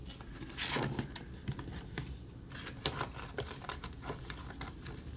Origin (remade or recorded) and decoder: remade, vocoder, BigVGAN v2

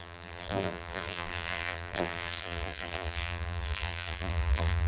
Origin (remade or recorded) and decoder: remade, vocoder, BigVGAN v2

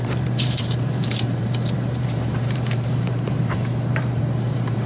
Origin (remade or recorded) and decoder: remade, vocoder, BigVGAN v2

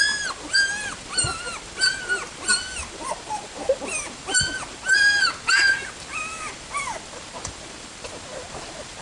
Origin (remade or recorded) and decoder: remade, vocoder, BigVGAN v2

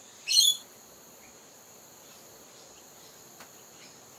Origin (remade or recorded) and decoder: recorded